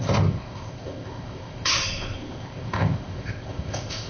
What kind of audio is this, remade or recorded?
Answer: remade